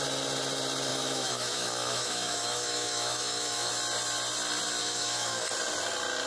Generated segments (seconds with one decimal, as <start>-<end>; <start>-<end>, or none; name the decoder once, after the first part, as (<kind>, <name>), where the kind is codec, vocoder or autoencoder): 0.9-3.7 (autoencoder, DAC-VAE); 4.8-5.5